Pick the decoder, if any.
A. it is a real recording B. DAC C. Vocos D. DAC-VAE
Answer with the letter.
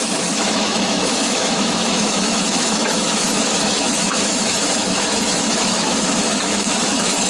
D